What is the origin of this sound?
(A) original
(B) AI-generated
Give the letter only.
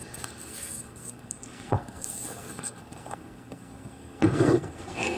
B